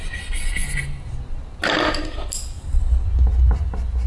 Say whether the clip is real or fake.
real